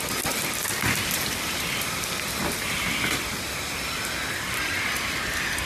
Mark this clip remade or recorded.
recorded